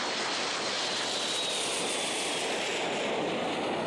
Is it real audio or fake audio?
real